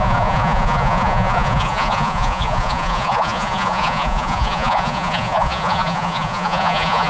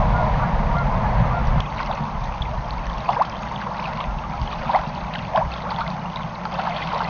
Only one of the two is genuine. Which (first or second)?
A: second